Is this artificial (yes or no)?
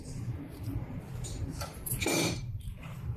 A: yes